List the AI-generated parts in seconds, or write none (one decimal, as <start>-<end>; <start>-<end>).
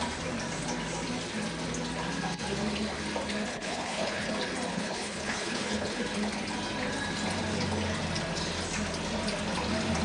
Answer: 3.5-4.3; 4.7-6.0